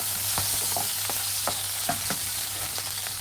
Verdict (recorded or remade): remade